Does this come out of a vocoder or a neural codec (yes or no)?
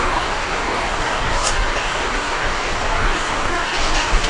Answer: yes